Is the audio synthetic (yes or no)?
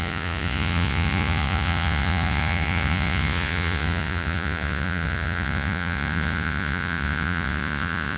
yes